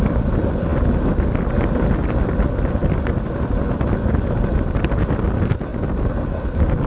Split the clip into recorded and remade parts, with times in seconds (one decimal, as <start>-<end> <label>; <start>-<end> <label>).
0.0-6.9 recorded